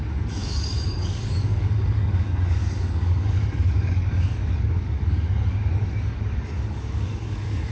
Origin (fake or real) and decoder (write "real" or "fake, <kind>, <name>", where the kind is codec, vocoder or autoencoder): fake, codec, DAC